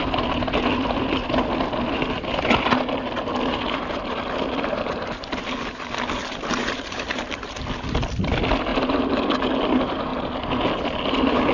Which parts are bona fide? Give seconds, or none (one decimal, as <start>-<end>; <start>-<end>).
0.0-6.6; 7.6-8.7; 9.2-11.5